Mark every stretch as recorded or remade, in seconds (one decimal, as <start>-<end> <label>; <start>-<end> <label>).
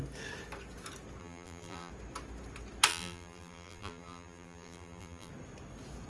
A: 0.0-1.2 recorded; 1.2-1.9 remade; 1.9-2.9 recorded; 2.9-5.3 remade; 5.3-6.1 recorded